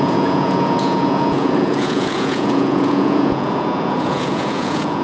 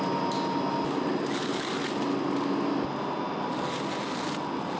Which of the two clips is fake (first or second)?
first